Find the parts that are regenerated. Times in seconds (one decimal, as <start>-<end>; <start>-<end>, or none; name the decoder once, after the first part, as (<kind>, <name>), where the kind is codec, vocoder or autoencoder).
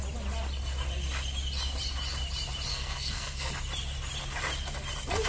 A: 2.7-3.5 (codec, SNAC)